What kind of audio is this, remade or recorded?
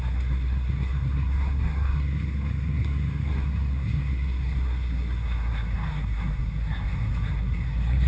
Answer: remade